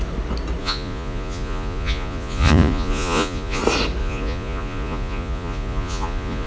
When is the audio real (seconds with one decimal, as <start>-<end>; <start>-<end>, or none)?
0.0-0.6; 3.6-4.0

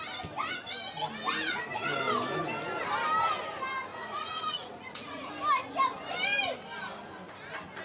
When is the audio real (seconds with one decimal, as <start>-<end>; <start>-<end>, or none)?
0.0-3.9; 5.3-7.8

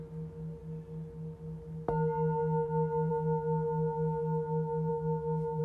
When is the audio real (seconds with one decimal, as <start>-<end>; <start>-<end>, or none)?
0.0-4.9

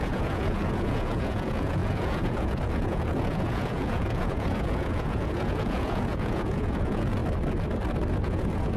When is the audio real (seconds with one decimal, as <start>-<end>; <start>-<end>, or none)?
7.2-8.2

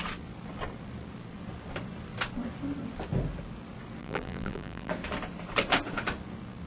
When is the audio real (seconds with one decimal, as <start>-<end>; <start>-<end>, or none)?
0.0-4.0; 4.9-6.7